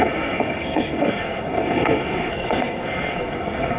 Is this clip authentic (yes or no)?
no